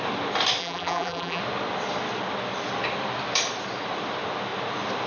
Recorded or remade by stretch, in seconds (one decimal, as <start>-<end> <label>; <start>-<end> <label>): 0.0-0.6 recorded; 0.6-1.4 remade; 1.4-5.1 recorded